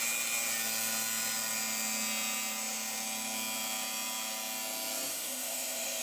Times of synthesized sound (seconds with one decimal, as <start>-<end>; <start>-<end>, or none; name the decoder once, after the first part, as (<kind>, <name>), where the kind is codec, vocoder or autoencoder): 5.1-6.0 (autoencoder, DAC-VAE)

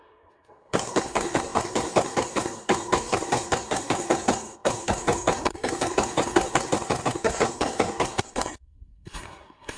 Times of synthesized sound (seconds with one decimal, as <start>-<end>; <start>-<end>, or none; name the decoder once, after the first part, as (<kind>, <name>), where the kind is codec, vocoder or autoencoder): 0.0-9.8 (codec, SNAC)

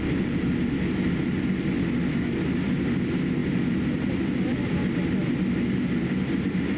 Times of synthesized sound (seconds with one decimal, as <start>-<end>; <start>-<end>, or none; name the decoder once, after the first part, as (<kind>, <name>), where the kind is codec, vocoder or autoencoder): 3.4-4.3 (vocoder, BigVGAN v2)